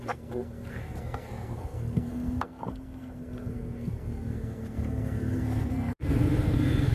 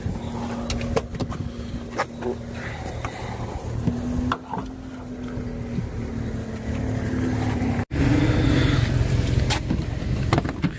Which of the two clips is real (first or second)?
second